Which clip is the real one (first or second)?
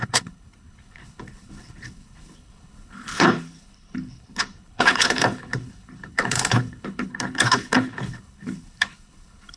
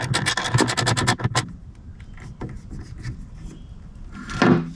second